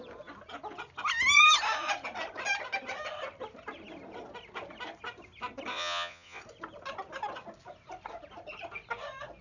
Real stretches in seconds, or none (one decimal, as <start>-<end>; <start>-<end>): 0.0-5.7; 6.4-9.4